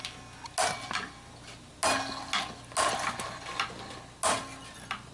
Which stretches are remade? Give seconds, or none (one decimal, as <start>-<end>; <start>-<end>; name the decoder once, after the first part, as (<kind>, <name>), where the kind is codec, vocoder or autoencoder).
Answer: none